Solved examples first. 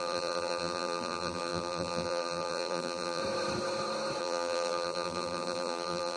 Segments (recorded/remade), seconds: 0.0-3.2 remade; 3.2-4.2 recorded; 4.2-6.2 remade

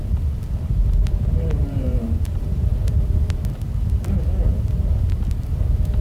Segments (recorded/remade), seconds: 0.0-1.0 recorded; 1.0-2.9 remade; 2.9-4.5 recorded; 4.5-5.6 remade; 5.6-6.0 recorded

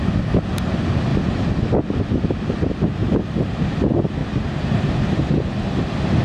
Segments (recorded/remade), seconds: 0.0-3.0 recorded; 3.0-3.5 remade; 3.5-4.2 recorded; 4.2-5.3 remade; 5.3-6.2 recorded

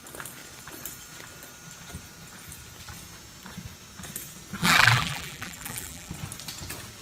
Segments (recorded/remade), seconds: 0.0-4.6 recorded; 4.6-6.1 remade; 6.1-7.0 recorded

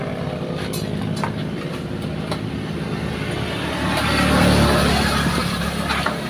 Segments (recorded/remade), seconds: 0.0-5.4 recorded; 5.4-6.3 remade

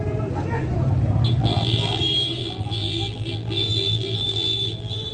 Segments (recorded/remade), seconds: 0.0-1.4 recorded; 1.4-2.0 remade; 2.0-2.4 recorded; 2.4-5.1 remade